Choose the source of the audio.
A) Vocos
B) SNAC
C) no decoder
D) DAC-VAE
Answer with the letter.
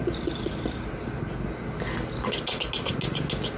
C